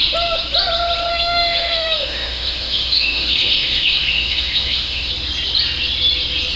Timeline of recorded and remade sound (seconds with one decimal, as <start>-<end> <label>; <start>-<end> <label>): 0.0-1.1 recorded; 1.1-5.1 remade; 5.1-6.6 recorded